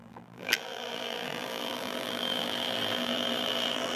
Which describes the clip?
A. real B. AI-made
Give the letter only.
B